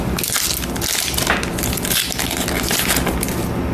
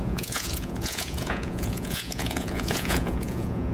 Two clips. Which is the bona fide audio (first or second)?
first